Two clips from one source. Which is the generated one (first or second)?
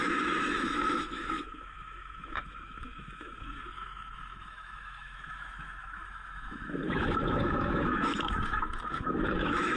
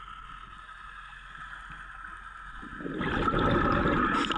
first